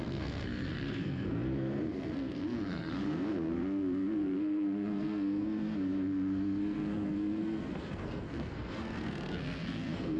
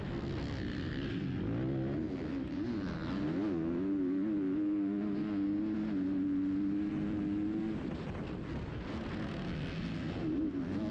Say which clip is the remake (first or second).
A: first